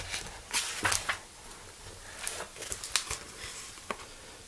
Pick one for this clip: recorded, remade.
recorded